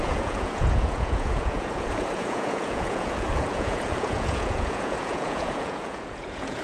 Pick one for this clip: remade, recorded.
remade